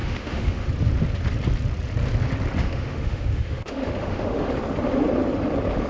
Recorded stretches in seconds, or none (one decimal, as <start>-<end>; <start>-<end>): 0.7-2.6; 4.5-5.9